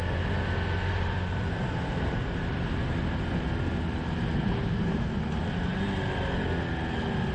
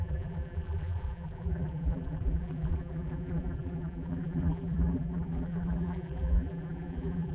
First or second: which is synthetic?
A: second